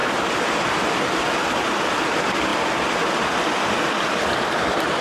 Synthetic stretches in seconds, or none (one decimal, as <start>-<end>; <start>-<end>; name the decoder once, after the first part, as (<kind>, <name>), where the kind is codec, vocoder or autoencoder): 0.0-2.5 (vocoder, BigVGAN v2); 4.1-5.0